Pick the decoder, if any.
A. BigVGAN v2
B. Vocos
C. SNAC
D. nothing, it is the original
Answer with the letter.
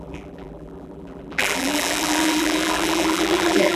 A